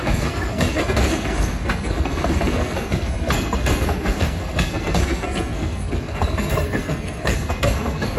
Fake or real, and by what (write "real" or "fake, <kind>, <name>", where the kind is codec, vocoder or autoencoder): fake, codec, SNAC